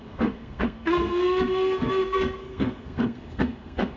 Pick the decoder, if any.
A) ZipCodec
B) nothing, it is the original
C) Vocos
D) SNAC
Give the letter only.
D